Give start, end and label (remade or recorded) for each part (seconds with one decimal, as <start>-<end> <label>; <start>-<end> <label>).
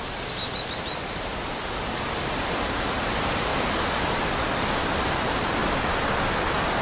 0.0-1.3 remade; 1.3-2.2 recorded; 2.2-3.5 remade; 3.5-5.0 recorded; 5.0-5.6 remade; 5.6-6.8 recorded